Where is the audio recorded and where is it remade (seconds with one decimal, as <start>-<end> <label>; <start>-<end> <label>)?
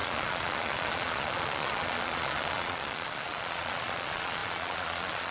0.0-5.3 remade